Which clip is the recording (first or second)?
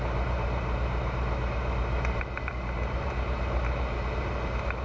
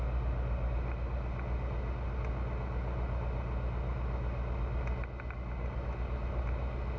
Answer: second